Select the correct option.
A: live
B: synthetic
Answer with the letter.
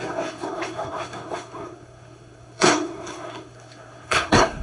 B